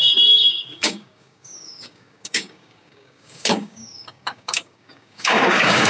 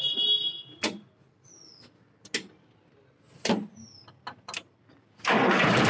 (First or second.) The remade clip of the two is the first